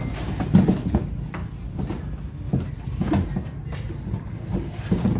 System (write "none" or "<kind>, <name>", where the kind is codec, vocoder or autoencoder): none